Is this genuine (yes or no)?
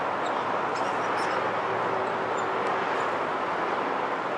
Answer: yes